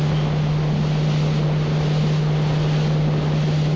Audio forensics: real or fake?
real